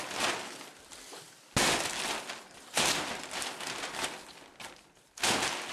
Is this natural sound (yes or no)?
yes